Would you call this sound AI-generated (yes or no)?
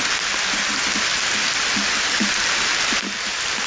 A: no